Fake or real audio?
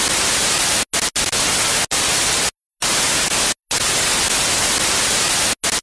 real